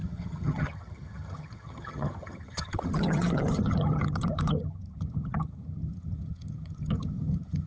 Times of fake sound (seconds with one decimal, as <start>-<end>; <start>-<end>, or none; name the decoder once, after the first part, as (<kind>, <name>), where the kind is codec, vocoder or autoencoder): 0.0-7.7 (vocoder, HiFi-GAN)

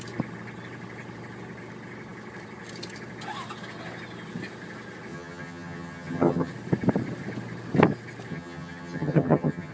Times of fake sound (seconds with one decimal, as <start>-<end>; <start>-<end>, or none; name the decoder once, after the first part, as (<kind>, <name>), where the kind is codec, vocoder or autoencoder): 5.1-6.5 (vocoder, HiFi-GAN); 8.3-9.7

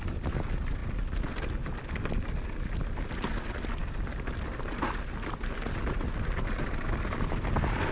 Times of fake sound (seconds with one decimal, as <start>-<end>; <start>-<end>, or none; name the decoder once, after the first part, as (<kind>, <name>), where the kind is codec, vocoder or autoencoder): none

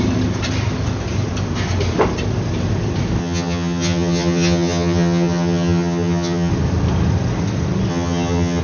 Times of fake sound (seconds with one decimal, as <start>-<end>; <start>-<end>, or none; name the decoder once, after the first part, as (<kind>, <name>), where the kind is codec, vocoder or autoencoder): 3.2-6.5 (vocoder, HiFi-GAN); 7.9-8.6